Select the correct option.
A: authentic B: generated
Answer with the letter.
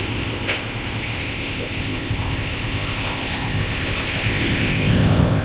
B